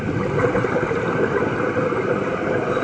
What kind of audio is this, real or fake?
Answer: real